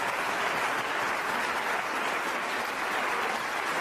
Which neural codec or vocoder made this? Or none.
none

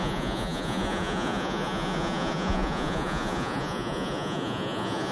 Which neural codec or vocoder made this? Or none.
vocoder, Vocos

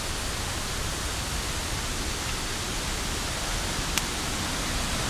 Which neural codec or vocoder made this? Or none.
none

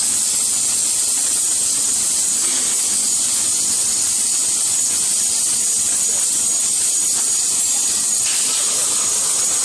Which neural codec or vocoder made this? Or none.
none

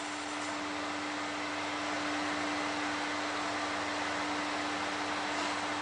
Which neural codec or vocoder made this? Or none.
none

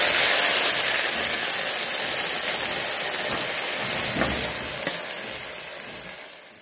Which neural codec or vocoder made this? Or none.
none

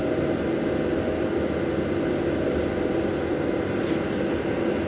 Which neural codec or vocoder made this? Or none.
none